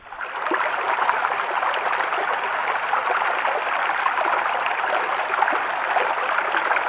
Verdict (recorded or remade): recorded